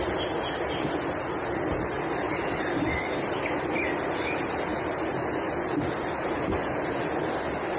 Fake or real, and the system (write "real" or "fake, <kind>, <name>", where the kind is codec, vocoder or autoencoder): real